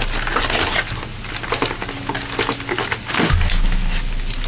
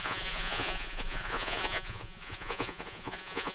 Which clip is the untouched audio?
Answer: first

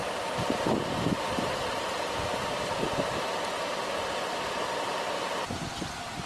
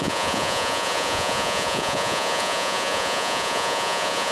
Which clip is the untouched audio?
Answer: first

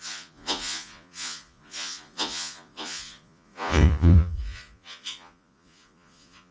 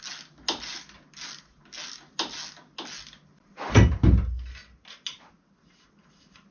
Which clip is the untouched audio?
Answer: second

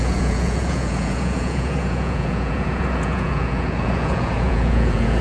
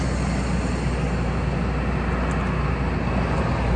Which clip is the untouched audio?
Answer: second